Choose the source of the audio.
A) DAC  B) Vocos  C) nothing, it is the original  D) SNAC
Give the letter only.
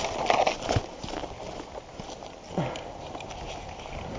C